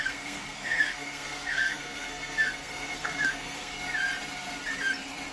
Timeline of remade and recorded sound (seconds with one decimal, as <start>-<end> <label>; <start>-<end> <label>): 0.0-3.7 remade; 3.7-5.3 recorded